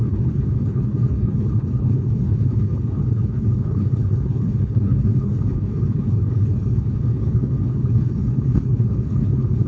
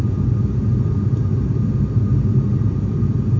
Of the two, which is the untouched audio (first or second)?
second